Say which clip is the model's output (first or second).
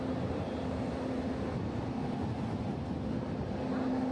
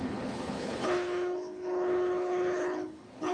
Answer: second